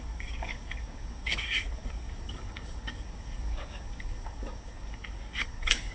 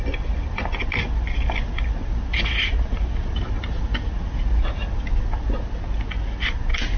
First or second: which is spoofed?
first